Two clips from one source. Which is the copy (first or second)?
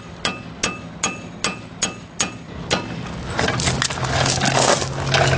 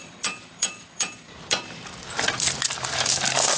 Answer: second